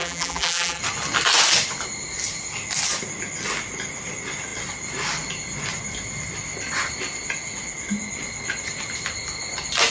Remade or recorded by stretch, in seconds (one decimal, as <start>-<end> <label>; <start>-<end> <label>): 0.0-0.8 remade; 0.8-9.9 recorded